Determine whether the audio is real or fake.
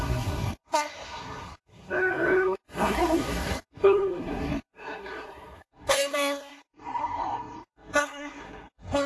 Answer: fake